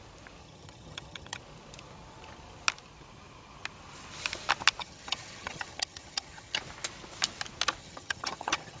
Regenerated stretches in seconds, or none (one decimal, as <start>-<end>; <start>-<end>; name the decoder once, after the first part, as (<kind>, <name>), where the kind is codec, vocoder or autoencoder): 0.4-1.4 (vocoder, HiFi-GAN); 4.8-6.6; 7.8-8.8